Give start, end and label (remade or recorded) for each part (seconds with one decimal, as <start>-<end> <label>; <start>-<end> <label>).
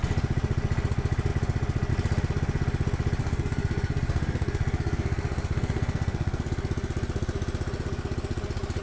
0.0-3.2 recorded; 3.2-6.5 remade; 6.5-8.8 recorded